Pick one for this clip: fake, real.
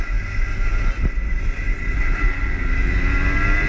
real